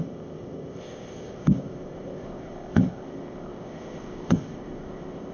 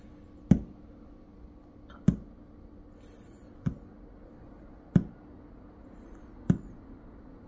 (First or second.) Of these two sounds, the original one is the second